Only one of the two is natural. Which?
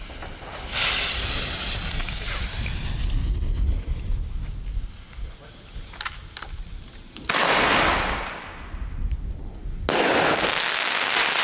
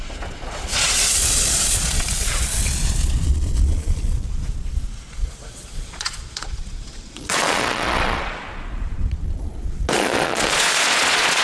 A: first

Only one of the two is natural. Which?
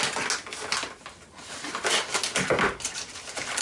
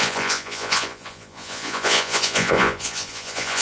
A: first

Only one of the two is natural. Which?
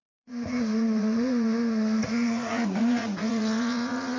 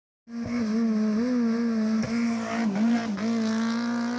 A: second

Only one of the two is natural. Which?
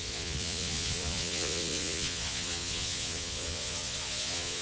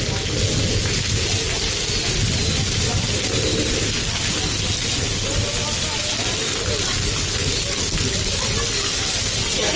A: second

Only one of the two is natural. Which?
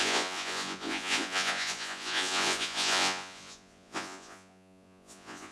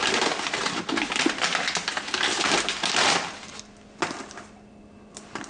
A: second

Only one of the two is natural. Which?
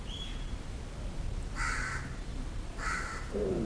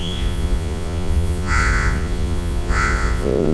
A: first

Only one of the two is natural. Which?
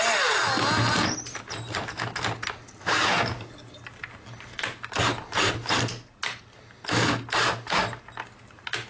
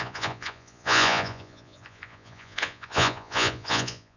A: first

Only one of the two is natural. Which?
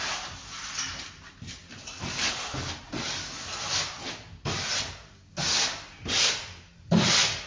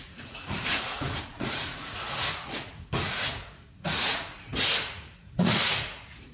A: first